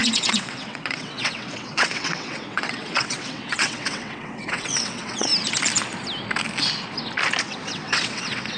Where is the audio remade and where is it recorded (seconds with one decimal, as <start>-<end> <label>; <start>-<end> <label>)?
0.0-5.3 remade; 5.3-7.4 recorded; 7.4-8.6 remade